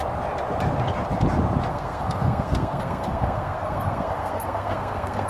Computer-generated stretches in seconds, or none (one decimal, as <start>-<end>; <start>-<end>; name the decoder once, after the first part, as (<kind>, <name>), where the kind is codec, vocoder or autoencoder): 1.7-5.3 (codec, SNAC)